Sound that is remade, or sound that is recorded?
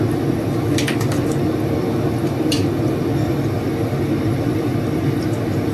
recorded